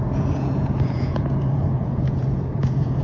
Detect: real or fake fake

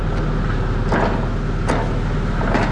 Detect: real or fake real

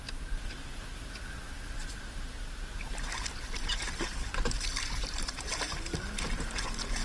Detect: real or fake real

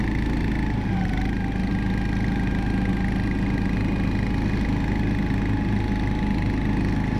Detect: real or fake real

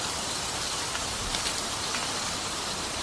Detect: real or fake real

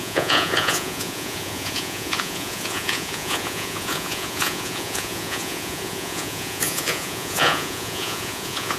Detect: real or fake fake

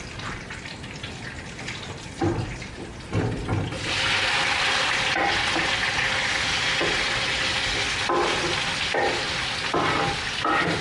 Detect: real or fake real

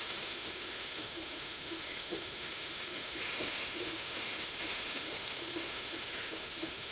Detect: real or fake fake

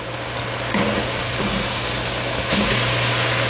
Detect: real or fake real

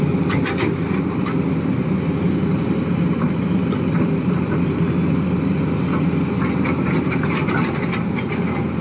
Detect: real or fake real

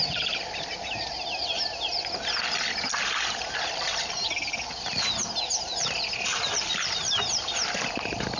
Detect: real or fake fake